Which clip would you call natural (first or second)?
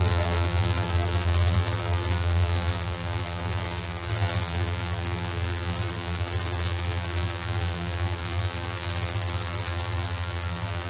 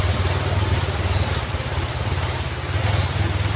second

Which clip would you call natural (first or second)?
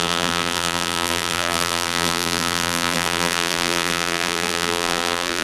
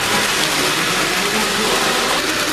second